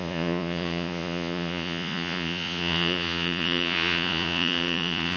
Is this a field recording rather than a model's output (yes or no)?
no